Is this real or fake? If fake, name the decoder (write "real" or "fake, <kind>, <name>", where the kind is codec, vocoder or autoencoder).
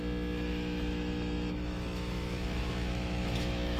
fake, autoencoder, DAC-VAE